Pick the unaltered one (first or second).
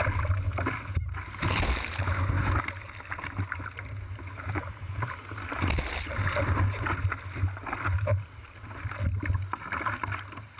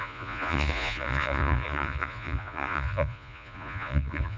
first